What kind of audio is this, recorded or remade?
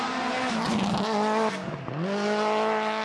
recorded